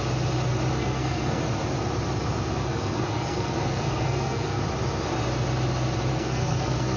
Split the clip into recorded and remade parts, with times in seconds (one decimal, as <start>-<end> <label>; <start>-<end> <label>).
0.0-0.8 recorded; 0.8-1.4 remade; 1.4-2.6 recorded; 2.6-4.6 remade; 4.6-6.1 recorded; 6.1-7.0 remade